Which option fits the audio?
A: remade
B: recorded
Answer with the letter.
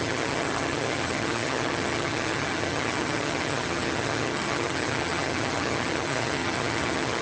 A